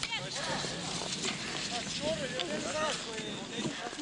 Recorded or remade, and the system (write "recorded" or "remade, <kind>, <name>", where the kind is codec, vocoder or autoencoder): recorded